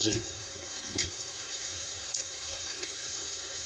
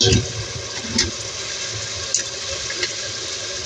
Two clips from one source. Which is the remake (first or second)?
first